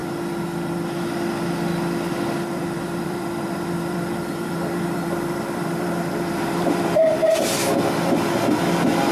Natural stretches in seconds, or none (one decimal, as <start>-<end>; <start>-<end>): 0.0-2.1; 7.3-9.1